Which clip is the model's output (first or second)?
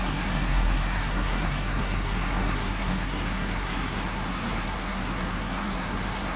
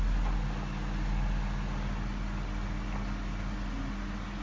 first